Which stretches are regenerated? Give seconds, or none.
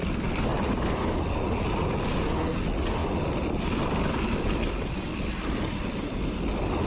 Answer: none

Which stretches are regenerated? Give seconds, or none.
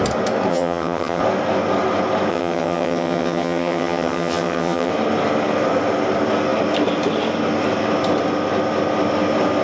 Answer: 0.5-1.2 (vocoder, HiFi-GAN); 2.3-4.9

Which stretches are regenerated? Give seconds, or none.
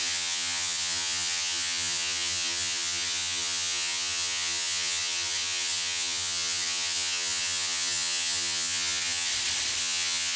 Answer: 0.0-9.3 (vocoder, HiFi-GAN); 9.8-10.4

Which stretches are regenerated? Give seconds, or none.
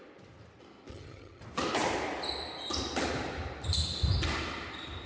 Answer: 0.9-1.4 (vocoder, HiFi-GAN)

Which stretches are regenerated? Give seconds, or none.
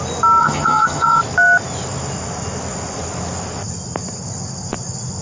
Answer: 0.4-1.2 (vocoder, HiFi-GAN)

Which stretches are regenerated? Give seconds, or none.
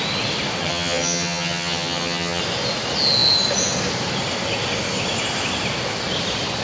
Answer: 0.6-2.4 (vocoder, HiFi-GAN)